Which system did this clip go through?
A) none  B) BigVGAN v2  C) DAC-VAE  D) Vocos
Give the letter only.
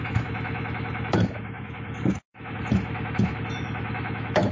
C